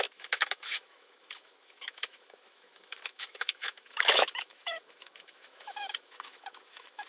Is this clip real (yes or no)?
no